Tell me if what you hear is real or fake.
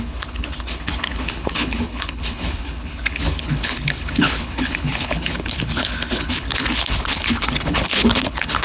fake